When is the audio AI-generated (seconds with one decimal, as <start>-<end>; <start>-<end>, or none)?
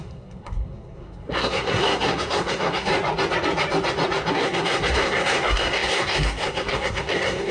0.0-2.9; 4.3-7.5